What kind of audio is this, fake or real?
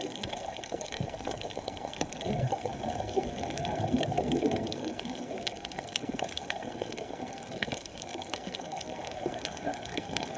fake